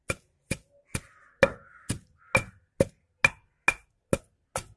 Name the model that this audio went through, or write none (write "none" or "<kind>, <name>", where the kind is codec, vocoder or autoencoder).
none